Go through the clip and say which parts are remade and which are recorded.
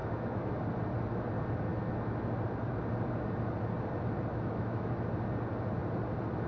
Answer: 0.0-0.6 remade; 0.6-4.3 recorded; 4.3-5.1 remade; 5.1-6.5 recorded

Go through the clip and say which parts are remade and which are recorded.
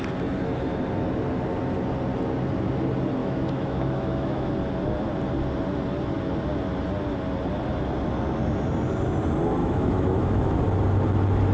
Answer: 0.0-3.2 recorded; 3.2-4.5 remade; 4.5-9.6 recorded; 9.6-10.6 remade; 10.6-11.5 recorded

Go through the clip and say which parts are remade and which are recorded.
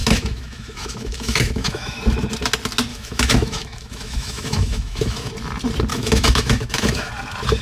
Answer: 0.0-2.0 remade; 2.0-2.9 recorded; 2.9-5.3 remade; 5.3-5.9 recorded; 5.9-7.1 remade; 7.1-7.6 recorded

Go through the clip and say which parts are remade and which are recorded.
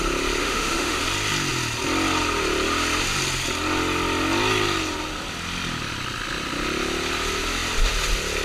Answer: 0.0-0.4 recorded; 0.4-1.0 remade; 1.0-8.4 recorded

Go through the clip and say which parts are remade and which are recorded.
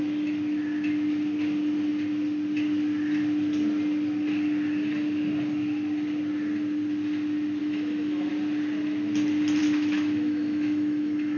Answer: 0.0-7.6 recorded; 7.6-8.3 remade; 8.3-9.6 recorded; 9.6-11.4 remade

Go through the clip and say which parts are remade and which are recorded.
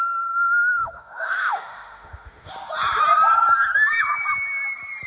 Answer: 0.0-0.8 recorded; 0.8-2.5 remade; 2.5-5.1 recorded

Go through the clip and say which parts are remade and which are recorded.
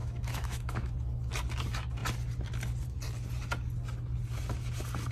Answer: 0.0-0.9 remade; 0.9-5.1 recorded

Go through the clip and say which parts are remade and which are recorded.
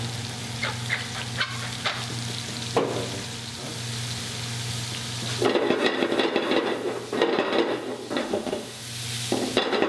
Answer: 0.0-8.2 recorded; 8.2-8.8 remade; 8.8-9.9 recorded